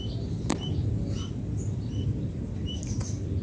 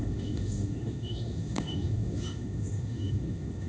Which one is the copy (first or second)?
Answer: second